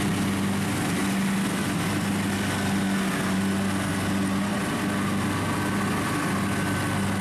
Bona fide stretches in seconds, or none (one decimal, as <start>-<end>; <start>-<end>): 0.0-7.2